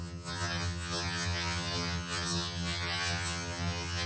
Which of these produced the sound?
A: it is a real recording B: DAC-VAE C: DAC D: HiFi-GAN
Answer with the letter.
D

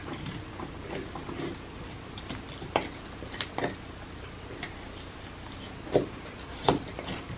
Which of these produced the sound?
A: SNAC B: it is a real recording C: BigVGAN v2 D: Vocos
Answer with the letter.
B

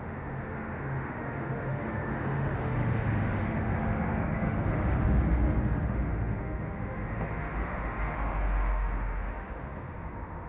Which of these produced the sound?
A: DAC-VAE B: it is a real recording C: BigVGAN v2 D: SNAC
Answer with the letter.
A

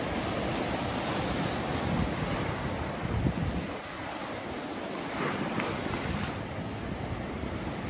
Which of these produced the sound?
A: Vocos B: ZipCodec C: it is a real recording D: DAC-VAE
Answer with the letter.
C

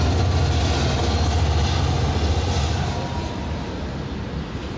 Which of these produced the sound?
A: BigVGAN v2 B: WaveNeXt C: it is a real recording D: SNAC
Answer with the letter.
C